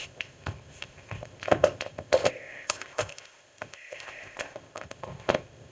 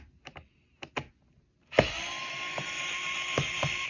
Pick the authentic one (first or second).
second